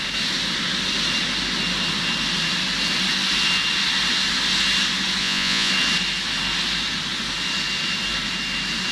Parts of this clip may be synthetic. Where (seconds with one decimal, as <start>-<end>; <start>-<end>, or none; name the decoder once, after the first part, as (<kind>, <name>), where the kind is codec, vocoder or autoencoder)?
5.2-5.7 (vocoder, Vocos)